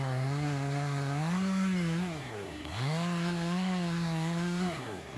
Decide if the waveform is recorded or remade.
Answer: remade